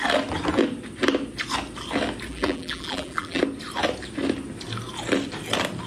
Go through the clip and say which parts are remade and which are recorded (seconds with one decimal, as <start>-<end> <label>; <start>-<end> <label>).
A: 0.0-2.3 recorded; 2.3-3.4 remade; 3.4-5.9 recorded